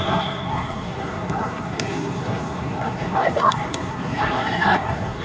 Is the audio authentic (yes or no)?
no